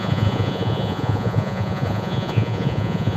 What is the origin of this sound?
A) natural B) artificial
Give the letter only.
B